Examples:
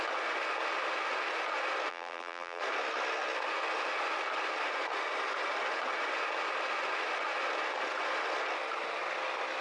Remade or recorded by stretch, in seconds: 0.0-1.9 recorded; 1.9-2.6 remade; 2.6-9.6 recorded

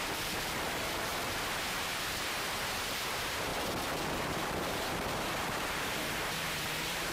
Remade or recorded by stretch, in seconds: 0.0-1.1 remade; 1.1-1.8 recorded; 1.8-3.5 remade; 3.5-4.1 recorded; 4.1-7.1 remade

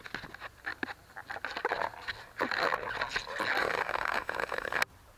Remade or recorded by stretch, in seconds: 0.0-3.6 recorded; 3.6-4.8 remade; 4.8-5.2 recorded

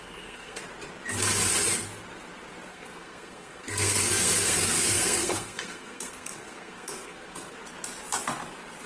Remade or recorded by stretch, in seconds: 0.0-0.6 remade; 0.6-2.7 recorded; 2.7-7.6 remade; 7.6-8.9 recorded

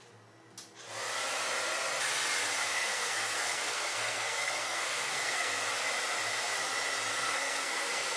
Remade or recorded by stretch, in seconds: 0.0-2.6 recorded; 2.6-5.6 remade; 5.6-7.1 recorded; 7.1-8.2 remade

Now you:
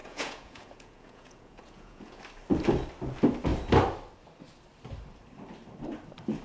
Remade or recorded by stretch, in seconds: 0.0-2.2 remade; 2.2-6.4 recorded

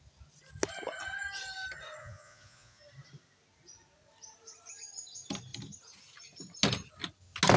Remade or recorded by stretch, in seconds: 0.0-2.0 recorded; 2.0-2.8 remade; 2.8-7.6 recorded

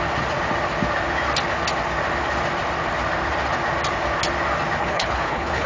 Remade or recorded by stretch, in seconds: 0.0-4.8 recorded; 4.8-5.7 remade